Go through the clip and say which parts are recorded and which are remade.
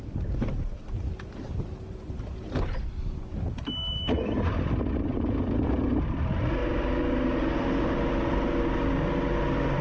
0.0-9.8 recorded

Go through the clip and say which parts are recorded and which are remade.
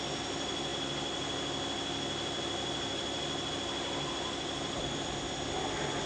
0.0-6.1 recorded